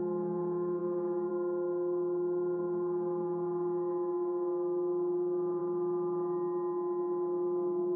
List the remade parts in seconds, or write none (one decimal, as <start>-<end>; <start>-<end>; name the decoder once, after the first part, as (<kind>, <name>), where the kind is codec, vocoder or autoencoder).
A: 0.0-5.6 (autoencoder, DAC-VAE)